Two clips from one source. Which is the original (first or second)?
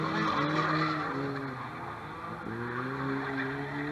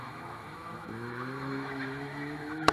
first